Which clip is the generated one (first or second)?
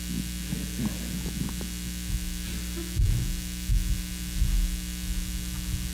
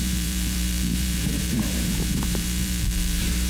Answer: second